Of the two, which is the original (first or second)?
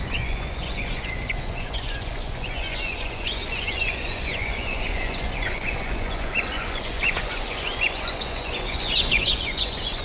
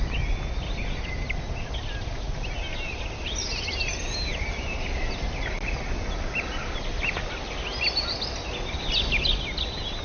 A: second